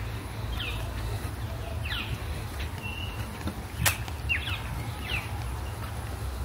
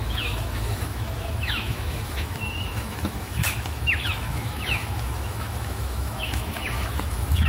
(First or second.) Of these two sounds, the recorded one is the first